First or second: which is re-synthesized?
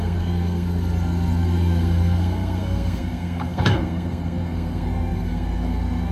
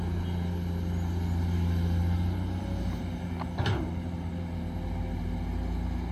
first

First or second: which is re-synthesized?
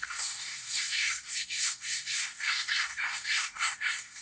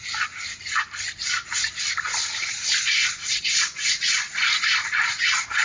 first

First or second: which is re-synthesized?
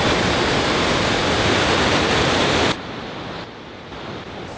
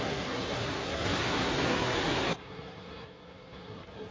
second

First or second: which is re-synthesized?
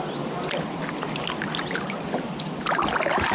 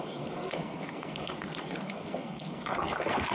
second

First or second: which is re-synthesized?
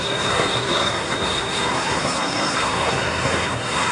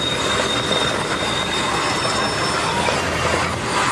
first